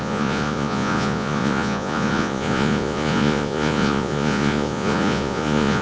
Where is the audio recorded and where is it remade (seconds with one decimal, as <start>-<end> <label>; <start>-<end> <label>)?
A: 0.0-5.8 remade

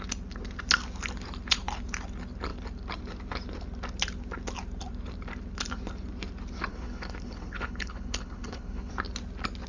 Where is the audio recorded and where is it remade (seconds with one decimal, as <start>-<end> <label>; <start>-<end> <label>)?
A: 0.0-6.7 recorded; 6.7-8.9 remade; 8.9-9.7 recorded

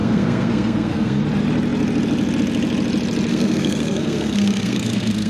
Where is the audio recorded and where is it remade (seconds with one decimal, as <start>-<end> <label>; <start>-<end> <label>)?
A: 0.0-1.2 remade; 1.2-3.3 recorded; 3.3-5.3 remade

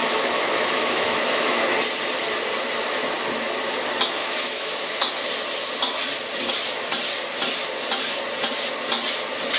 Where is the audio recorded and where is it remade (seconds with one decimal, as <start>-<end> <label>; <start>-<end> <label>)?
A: 0.0-1.6 remade; 1.6-4.2 recorded; 4.2-5.0 remade; 5.0-9.6 recorded

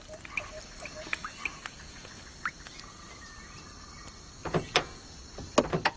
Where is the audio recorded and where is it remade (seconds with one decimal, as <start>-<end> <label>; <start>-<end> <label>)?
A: 0.0-1.5 recorded; 1.5-2.1 remade; 2.1-4.4 recorded; 4.4-5.1 remade; 5.1-6.0 recorded